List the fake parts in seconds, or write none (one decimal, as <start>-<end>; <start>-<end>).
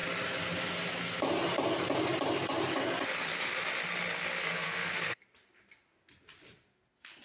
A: 4.4-5.2